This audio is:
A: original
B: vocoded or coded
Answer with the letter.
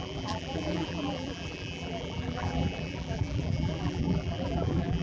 B